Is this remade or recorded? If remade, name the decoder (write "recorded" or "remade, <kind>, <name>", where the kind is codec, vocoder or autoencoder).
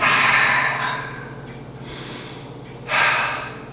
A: recorded